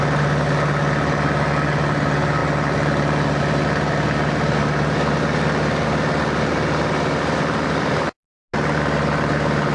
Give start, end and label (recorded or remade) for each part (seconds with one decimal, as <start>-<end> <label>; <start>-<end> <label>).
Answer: 0.0-9.7 recorded

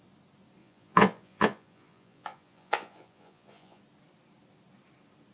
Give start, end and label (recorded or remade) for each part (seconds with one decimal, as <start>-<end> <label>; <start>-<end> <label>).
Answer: 0.0-0.6 recorded; 0.6-3.8 remade; 3.8-5.3 recorded

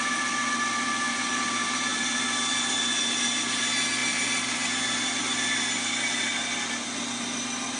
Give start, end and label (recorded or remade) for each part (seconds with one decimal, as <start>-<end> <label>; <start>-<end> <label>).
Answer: 0.0-7.8 recorded

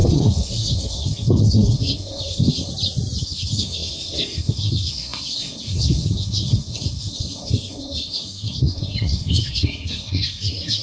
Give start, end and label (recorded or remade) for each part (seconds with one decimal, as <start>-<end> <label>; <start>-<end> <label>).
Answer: 0.0-2.7 remade; 2.7-3.2 recorded; 3.2-10.8 remade